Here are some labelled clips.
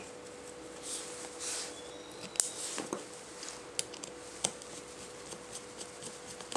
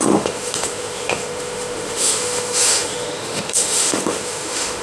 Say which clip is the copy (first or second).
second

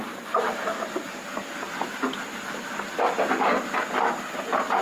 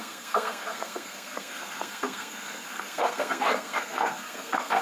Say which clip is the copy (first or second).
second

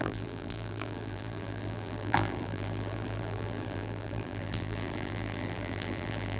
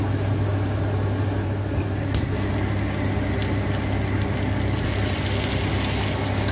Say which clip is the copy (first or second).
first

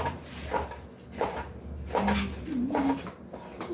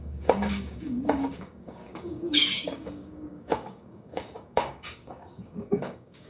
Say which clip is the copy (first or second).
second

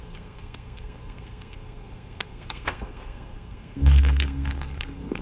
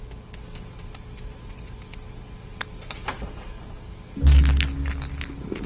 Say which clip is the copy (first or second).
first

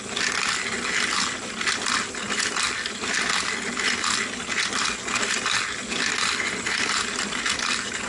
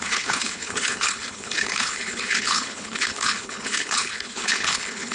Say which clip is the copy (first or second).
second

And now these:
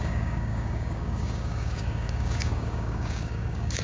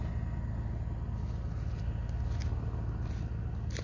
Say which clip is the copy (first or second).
first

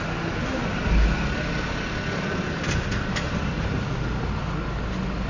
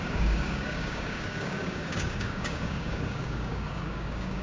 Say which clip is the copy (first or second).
second